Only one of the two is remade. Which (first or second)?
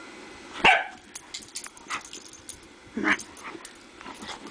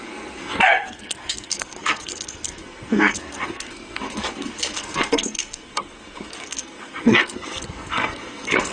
second